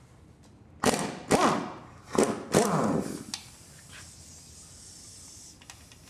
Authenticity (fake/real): real